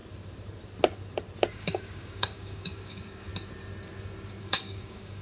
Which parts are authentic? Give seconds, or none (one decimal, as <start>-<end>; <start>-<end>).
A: 0.0-1.5; 3.3-4.4